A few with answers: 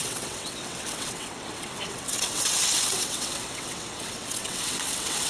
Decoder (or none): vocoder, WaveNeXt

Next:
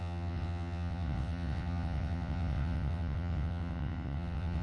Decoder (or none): vocoder, WaveNeXt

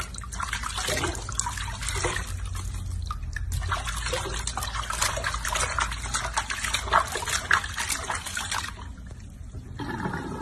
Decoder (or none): none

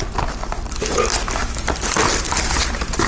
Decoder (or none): none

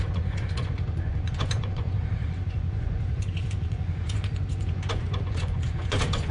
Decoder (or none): vocoder, Vocos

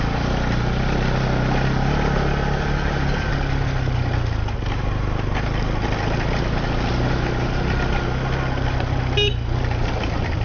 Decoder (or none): none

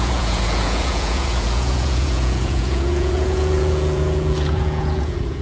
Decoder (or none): vocoder, Vocos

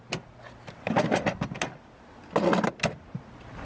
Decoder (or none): none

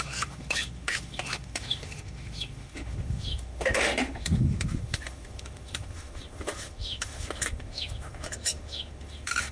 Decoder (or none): autoencoder, DAC-VAE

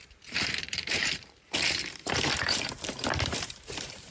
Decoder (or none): vocoder, BigVGAN v2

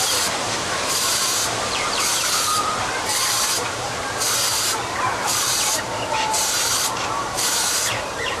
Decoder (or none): vocoder, BigVGAN v2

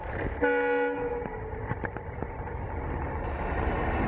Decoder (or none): none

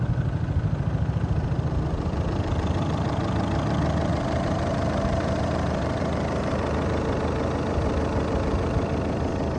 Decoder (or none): vocoder, BigVGAN v2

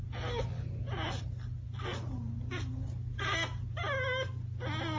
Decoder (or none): none